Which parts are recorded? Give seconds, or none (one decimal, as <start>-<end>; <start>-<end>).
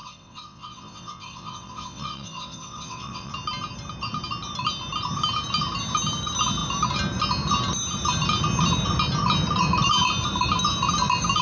3.3-11.4